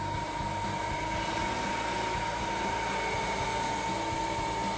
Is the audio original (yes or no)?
yes